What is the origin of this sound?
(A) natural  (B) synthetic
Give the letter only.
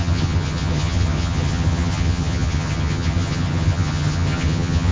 B